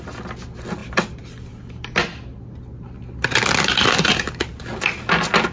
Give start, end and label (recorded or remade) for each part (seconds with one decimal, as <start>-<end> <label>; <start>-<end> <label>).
0.0-5.5 recorded